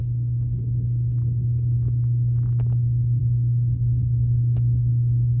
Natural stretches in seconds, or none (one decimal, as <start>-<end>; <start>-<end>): 0.0-5.4